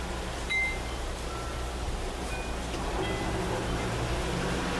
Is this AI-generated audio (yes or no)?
no